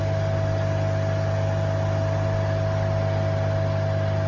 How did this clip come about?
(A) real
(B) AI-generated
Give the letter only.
A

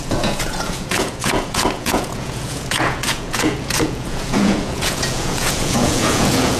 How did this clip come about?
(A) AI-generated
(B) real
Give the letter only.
A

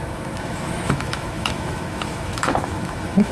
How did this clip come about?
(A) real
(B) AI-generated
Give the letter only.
B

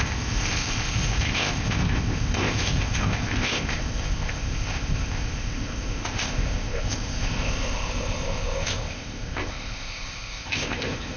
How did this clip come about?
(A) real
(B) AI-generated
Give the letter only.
B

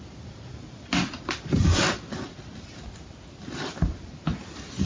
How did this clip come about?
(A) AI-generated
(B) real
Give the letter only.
B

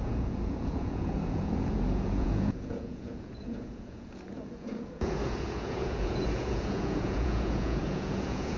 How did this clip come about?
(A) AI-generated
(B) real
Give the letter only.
A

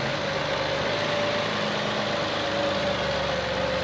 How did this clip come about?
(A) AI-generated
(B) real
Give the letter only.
B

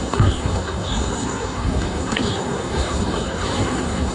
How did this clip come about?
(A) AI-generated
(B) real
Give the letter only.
A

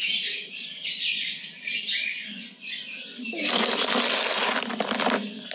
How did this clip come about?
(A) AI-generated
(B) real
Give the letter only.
B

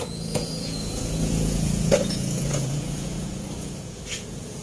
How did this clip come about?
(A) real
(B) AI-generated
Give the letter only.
B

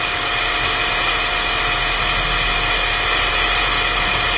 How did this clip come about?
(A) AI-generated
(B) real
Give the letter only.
B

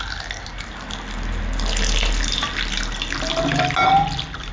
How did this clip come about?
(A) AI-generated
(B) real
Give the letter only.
B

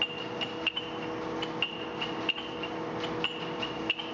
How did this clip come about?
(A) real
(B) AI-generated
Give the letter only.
A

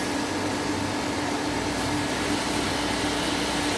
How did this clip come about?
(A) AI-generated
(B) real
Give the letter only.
B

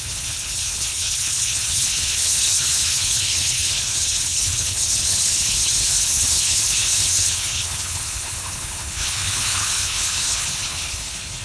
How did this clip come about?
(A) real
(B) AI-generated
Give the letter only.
B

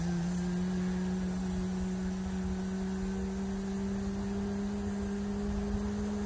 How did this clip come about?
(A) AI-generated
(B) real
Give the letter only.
B